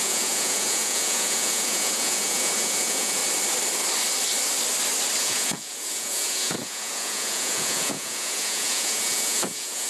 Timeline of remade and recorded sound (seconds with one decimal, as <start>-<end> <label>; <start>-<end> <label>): 0.0-3.2 remade; 3.2-5.2 recorded; 5.2-9.9 remade